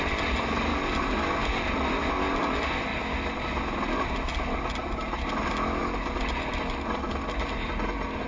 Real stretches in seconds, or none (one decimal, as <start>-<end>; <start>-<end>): 0.0-8.3